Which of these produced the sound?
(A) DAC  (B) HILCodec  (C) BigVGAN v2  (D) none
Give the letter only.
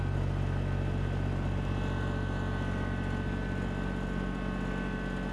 D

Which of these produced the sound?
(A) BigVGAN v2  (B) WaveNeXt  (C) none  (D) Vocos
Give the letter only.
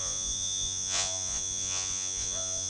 D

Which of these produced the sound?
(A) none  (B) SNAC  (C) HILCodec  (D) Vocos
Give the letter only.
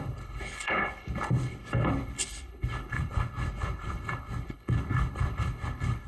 C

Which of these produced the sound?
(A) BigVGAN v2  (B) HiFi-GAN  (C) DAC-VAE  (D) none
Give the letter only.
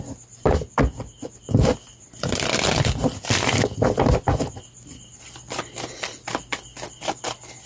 D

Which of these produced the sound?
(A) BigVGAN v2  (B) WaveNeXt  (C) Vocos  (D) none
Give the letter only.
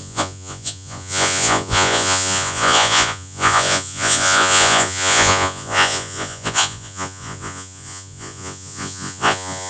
C